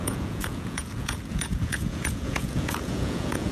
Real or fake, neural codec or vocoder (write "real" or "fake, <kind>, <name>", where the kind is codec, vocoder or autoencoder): fake, vocoder, Vocos